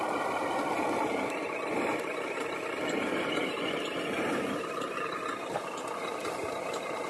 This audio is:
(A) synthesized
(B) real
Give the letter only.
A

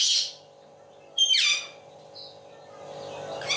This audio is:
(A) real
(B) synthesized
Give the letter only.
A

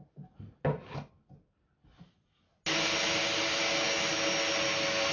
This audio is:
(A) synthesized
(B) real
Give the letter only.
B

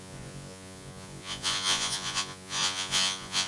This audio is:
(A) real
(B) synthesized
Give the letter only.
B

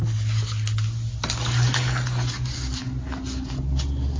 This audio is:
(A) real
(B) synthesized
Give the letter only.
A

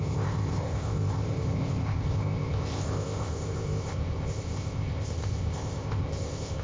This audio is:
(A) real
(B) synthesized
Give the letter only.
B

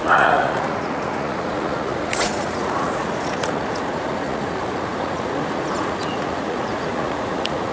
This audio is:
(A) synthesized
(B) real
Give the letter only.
A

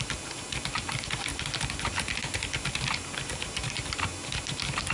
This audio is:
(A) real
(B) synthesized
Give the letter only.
A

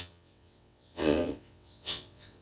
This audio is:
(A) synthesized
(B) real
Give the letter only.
A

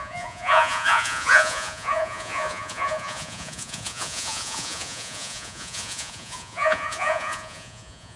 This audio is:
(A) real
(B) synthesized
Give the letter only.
B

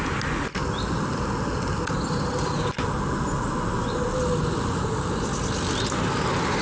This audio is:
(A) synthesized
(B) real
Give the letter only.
B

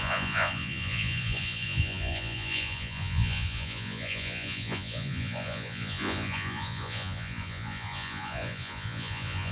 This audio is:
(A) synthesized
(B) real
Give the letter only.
A